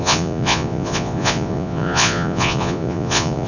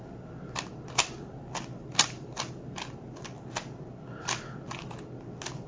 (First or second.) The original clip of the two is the second